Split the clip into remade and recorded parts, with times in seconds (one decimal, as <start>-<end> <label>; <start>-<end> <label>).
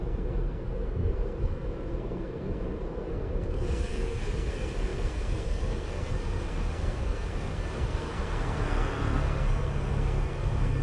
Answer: 0.0-10.8 remade